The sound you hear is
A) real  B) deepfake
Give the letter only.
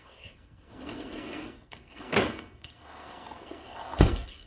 B